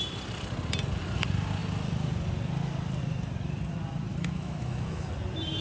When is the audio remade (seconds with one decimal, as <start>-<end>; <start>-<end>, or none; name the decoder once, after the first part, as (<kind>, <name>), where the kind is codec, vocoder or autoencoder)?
4.1-5.1 (autoencoder, DAC-VAE)